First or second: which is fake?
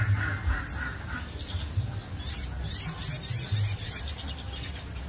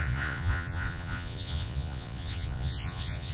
second